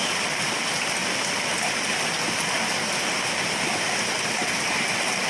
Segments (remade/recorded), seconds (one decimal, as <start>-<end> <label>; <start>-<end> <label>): 0.0-5.3 recorded